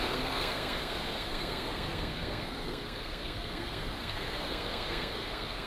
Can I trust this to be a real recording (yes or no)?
no